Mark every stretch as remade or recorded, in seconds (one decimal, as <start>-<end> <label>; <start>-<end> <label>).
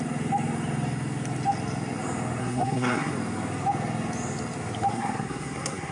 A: 0.0-2.4 recorded; 2.4-3.1 remade; 3.1-4.9 recorded; 4.9-5.9 remade